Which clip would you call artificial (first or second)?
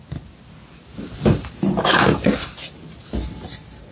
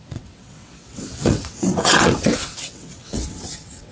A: second